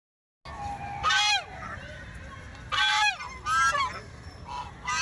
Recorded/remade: recorded